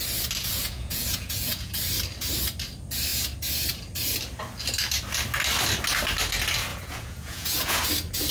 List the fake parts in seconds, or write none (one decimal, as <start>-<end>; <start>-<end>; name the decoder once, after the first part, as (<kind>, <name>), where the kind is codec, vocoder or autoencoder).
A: 0.4-1.7 (vocoder, Vocos); 6.7-7.8